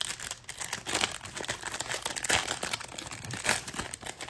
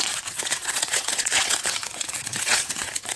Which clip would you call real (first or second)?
first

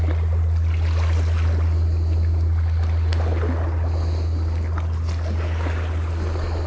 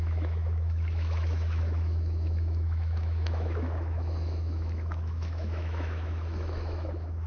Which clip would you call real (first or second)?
first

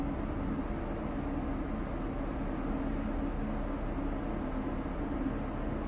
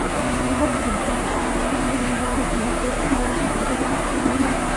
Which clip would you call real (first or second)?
first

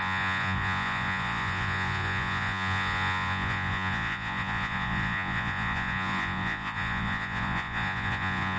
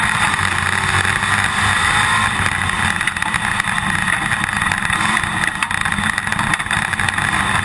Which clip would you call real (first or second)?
second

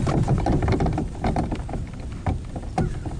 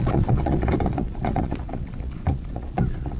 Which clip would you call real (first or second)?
first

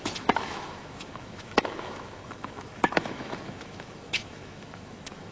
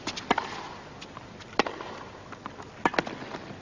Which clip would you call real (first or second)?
second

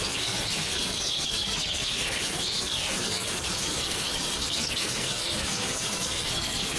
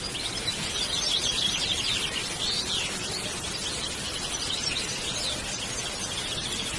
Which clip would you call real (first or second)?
second